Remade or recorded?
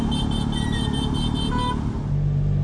recorded